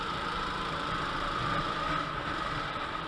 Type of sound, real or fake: fake